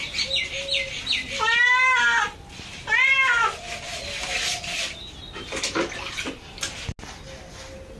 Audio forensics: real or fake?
real